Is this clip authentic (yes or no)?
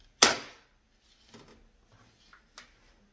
yes